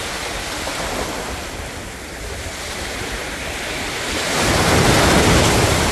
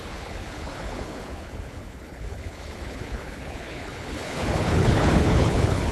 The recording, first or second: first